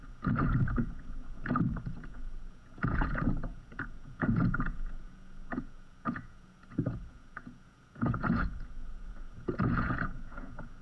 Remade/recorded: remade